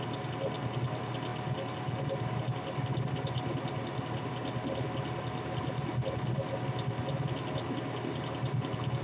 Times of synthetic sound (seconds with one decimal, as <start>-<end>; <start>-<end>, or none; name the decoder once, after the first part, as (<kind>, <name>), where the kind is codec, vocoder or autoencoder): none